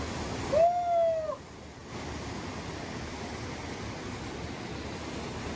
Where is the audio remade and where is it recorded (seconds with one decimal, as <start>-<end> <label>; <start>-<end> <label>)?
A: 0.0-5.6 recorded